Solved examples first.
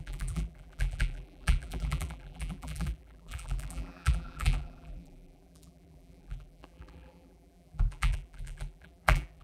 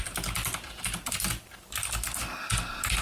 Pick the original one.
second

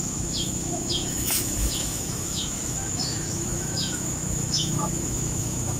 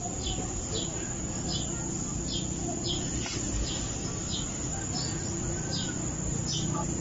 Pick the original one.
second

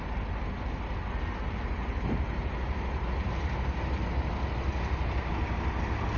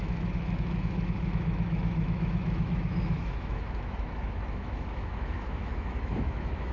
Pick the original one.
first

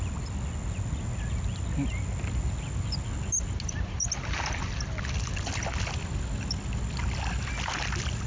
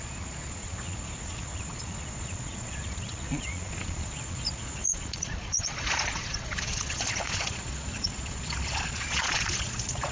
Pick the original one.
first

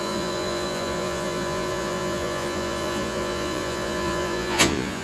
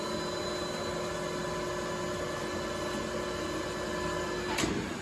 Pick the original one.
second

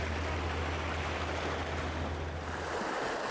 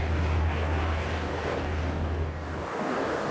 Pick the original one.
first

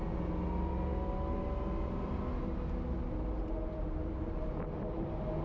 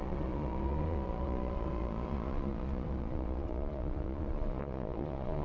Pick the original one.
first